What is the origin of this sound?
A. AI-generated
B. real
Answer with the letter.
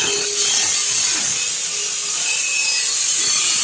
B